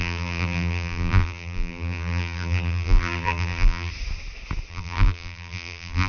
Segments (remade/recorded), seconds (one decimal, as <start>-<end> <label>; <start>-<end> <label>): 0.0-3.9 remade; 3.9-4.7 recorded; 4.7-6.1 remade